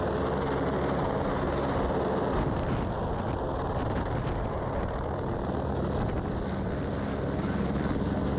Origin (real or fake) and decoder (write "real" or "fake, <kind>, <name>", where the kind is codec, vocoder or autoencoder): real